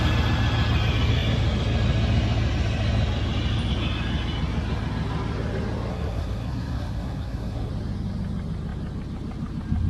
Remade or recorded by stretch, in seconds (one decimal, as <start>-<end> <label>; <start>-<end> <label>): 0.0-5.9 recorded; 5.9-7.7 remade; 7.7-9.9 recorded